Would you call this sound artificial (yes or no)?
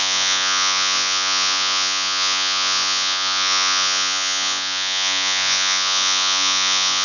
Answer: yes